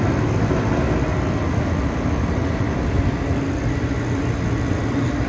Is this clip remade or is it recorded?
recorded